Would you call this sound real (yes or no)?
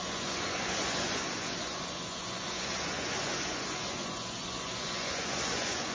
no